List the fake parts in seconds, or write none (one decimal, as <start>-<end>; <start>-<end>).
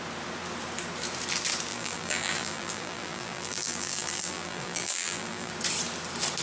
1.7-5.5